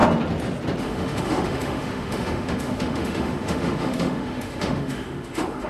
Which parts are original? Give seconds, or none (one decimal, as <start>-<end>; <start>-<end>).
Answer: 0.0-0.8